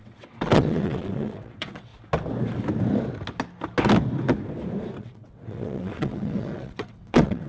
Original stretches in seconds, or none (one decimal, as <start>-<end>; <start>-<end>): 1.9-5.0